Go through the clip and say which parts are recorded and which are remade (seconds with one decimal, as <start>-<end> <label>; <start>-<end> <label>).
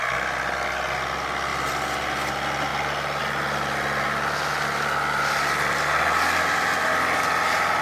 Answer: 0.0-1.5 recorded; 1.5-2.3 remade; 2.3-2.7 recorded; 2.7-3.2 remade; 3.2-6.8 recorded; 6.8-7.8 remade